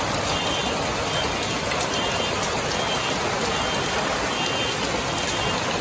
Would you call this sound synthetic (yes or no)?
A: no